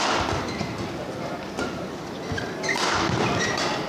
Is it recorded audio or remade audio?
recorded